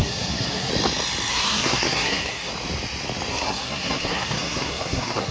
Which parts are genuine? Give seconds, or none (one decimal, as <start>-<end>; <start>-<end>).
0.7-1.3; 2.5-3.3